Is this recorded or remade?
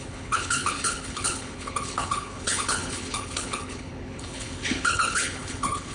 remade